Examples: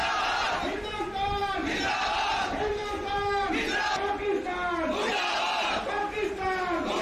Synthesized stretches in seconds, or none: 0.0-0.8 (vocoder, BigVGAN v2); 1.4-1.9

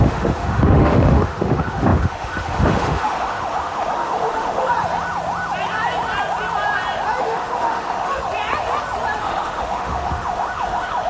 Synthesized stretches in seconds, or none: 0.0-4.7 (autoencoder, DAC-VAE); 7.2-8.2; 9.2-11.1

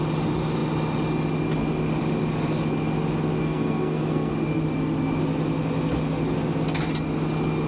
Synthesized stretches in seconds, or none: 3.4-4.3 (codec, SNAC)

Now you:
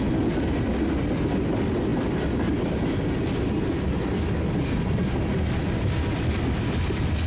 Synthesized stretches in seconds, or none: none

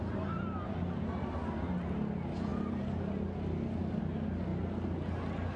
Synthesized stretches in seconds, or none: none

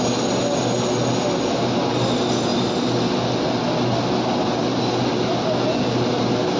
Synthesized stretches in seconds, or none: none

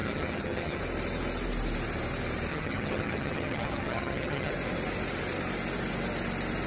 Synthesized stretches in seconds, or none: 0.0-0.8 (vocoder, HiFi-GAN); 2.5-4.5